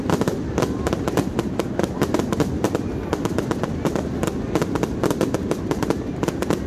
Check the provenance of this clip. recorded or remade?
remade